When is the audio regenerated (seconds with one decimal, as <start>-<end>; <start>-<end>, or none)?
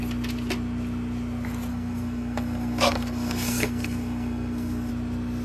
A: 1.7-4.9